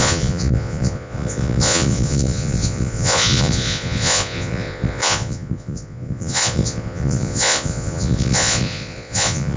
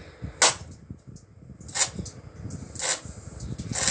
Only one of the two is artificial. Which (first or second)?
first